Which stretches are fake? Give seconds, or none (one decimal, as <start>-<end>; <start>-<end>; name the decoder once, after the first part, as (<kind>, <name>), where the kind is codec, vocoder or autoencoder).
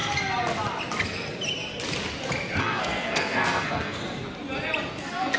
2.6-4.0 (codec, SNAC); 4.9-5.4